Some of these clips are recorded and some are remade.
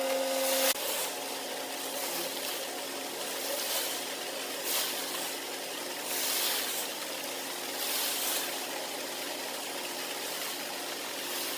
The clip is recorded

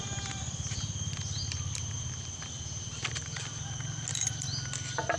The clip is remade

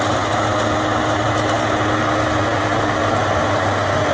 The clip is recorded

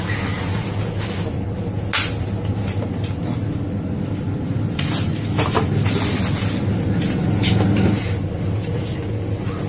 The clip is recorded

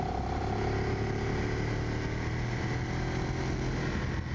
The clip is recorded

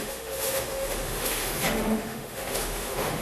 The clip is remade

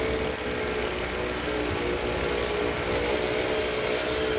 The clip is recorded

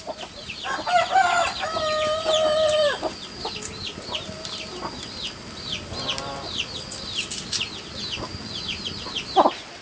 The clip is recorded